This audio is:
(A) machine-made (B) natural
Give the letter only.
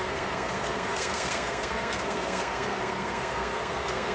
A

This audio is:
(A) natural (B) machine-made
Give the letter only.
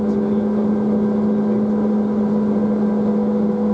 A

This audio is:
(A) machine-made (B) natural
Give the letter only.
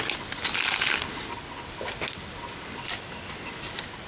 B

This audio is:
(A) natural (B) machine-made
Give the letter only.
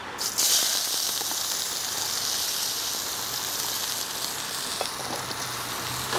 A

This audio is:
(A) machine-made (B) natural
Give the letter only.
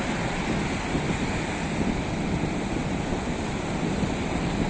B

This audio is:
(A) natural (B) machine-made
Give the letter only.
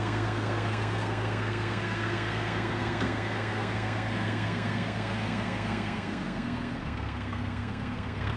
B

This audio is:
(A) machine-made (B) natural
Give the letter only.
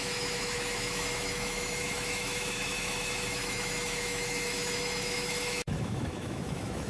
A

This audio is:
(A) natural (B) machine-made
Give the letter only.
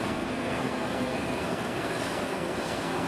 B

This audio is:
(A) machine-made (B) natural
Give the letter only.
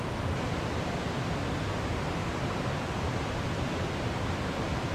B